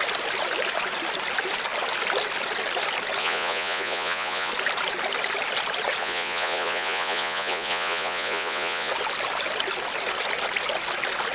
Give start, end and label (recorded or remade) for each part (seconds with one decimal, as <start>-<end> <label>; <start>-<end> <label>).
0.0-3.2 recorded; 3.2-4.5 remade; 4.5-6.0 recorded; 6.0-8.9 remade; 8.9-11.3 recorded